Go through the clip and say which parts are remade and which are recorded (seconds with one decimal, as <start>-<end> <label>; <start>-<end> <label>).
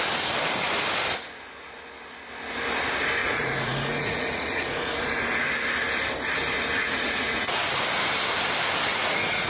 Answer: 0.0-3.2 recorded; 3.2-5.1 remade; 5.1-6.8 recorded; 6.8-7.6 remade; 7.6-8.9 recorded; 8.9-9.5 remade